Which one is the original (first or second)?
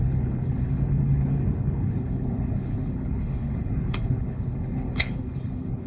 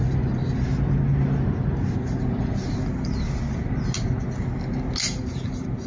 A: second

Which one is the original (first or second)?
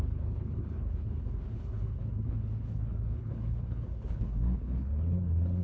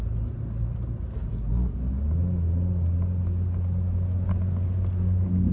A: second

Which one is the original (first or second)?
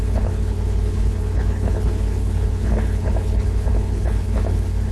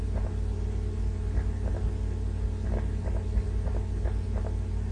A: second